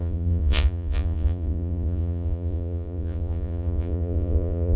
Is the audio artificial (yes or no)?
yes